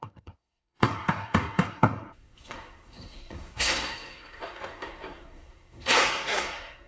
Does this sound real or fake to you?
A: fake